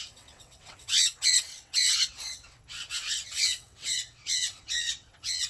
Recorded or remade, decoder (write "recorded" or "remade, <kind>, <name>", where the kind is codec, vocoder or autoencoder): remade, vocoder, WaveNeXt